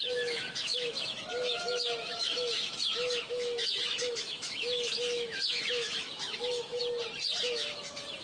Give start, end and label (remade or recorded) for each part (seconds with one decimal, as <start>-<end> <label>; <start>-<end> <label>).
0.0-6.8 remade; 6.8-7.4 recorded; 7.4-8.2 remade